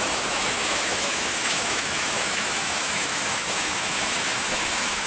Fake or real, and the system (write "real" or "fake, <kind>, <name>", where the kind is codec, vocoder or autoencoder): fake, autoencoder, DAC-VAE